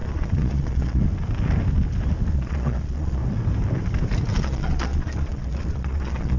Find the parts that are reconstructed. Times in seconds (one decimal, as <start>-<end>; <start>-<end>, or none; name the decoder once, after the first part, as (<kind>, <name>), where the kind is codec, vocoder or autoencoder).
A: 0.0-1.0 (vocoder, Vocos); 2.3-3.2; 4.3-6.4